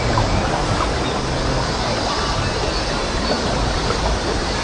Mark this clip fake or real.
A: real